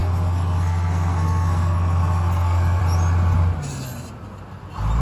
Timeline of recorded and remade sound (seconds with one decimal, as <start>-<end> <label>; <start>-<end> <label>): 0.0-2.8 remade; 2.8-5.0 recorded